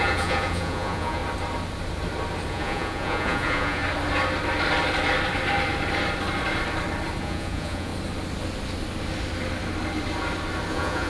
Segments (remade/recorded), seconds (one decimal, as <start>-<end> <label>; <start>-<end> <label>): 0.0-1.2 remade; 1.2-2.5 recorded; 2.5-3.8 remade; 3.8-7.2 recorded; 7.2-7.9 remade; 7.9-10.7 recorded; 10.7-11.1 remade